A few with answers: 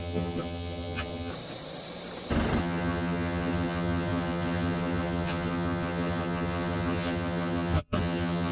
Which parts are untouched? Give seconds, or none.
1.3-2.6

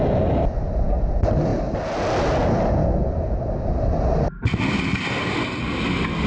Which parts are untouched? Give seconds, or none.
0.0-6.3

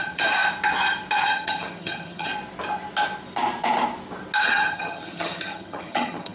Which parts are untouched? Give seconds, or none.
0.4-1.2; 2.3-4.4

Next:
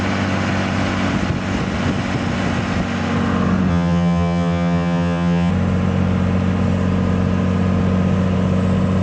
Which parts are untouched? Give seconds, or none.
0.0-3.7; 5.5-9.0

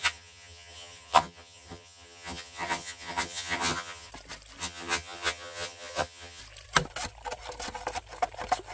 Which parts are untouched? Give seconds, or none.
4.1-4.6; 6.4-8.7